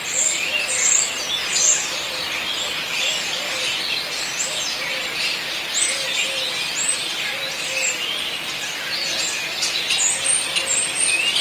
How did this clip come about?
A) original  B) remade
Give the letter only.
A